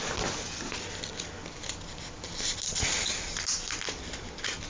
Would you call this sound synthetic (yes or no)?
no